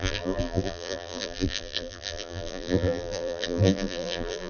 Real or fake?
fake